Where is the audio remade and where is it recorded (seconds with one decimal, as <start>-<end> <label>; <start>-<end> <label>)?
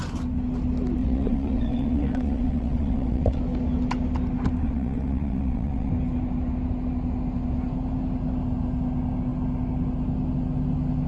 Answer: 0.0-1.0 recorded; 1.0-3.4 remade; 3.4-4.6 recorded; 4.6-5.9 remade; 5.9-11.1 recorded